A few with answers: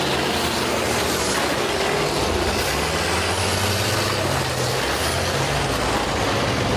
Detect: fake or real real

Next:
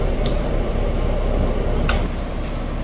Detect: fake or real fake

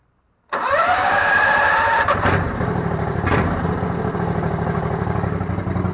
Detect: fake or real fake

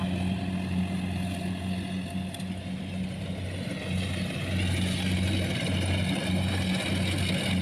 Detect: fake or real real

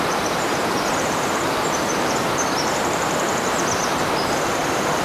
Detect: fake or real fake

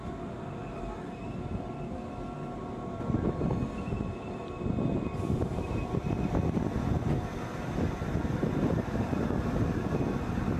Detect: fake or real real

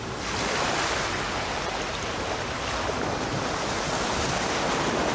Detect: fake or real real